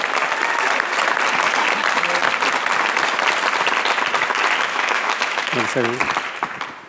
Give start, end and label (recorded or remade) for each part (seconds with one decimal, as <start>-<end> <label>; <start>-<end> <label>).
0.0-4.7 recorded; 4.7-5.4 remade; 5.4-6.9 recorded